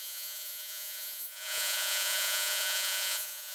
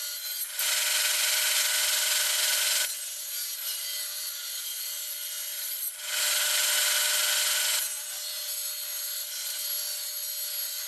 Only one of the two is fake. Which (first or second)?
first